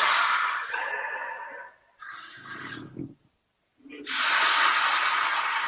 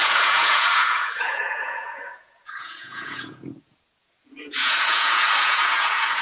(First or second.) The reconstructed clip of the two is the second